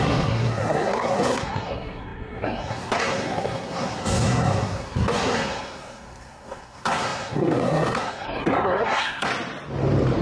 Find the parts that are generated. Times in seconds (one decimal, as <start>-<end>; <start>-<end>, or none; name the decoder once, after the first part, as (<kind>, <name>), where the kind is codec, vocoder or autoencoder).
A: 0.0-9.3 (codec, SNAC)